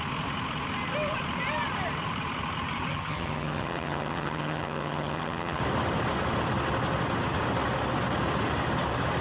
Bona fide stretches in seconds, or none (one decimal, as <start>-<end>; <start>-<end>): 0.0-2.9; 5.6-9.2